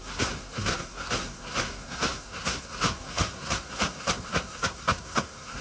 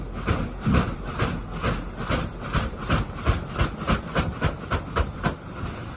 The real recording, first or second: second